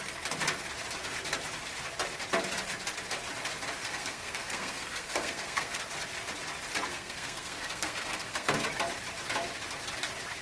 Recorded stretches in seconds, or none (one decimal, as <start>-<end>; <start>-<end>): 0.0-3.8; 5.8-6.9; 8.5-10.4